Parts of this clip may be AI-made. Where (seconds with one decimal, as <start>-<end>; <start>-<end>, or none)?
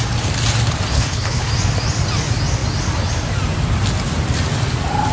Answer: 0.9-1.5